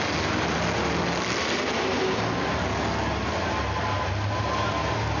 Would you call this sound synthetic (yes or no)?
no